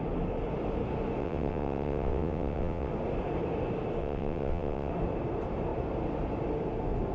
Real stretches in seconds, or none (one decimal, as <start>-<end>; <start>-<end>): 0.0-1.2; 2.9-4.0; 4.9-7.1